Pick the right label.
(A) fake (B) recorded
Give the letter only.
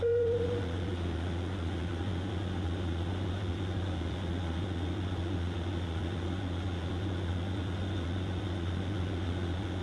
A